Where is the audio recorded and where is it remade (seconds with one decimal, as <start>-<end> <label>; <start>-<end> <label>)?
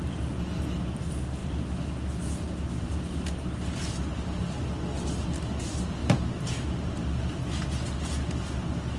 0.0-9.0 recorded